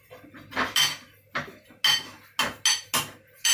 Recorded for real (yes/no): yes